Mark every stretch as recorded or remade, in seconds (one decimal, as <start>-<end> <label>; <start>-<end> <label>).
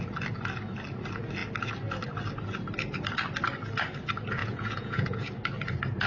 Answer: 0.0-4.4 recorded; 4.4-5.3 remade; 5.3-6.1 recorded